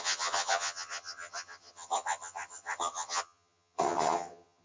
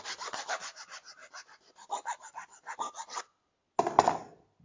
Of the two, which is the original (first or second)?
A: second